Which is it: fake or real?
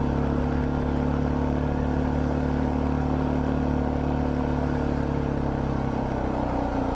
real